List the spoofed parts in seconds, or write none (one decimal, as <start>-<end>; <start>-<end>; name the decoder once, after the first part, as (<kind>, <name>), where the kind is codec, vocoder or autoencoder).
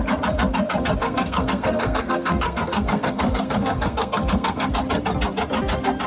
1.0-4.7 (codec, SNAC)